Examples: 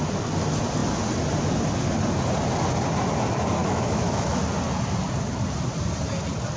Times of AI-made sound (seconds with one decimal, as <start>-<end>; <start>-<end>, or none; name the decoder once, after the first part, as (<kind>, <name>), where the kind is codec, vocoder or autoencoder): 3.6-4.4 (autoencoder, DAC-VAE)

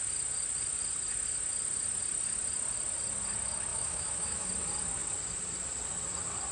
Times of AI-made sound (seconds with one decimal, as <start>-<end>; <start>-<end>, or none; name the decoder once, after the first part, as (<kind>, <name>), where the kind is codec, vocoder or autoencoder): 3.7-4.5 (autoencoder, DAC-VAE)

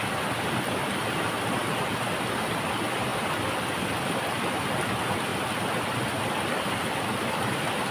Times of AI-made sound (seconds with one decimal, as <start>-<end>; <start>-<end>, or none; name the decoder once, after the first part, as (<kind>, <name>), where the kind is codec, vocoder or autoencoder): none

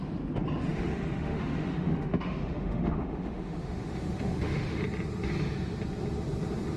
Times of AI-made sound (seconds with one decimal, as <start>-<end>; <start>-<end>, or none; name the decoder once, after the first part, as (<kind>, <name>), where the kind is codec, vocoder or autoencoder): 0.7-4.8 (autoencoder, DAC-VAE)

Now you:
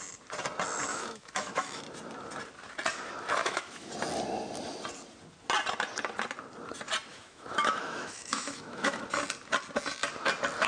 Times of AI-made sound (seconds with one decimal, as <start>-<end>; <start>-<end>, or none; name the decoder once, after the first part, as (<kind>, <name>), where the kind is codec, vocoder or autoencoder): 0.9-1.8 (autoencoder, DAC-VAE); 3.4-3.9; 7.1-9.0

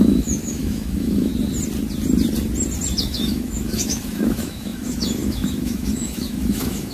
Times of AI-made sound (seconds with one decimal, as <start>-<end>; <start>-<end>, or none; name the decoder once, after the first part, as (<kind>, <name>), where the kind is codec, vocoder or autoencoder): 0.0-1.3 (autoencoder, DAC-VAE); 3.0-6.9

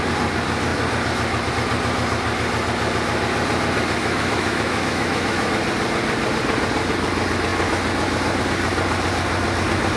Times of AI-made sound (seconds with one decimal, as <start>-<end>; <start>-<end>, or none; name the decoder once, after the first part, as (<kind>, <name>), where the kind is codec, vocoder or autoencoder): 4.0-5.5 (autoencoder, DAC-VAE)